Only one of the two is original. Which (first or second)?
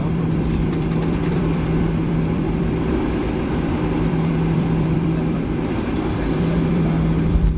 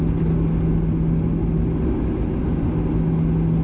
second